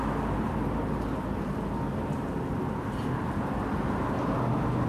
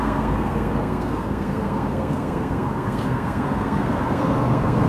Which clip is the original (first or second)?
first